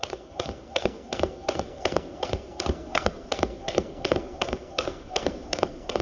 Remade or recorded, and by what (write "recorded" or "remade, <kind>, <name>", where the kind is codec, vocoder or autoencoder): remade, codec, SNAC